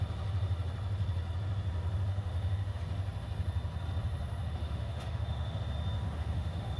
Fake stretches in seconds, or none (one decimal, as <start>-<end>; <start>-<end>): 2.1-2.8; 4.6-5.6; 6.0-6.8